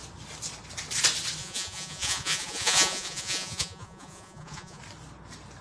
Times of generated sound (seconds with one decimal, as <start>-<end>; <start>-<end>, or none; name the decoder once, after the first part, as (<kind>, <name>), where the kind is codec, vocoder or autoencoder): 1.4-4.8 (vocoder, Vocos)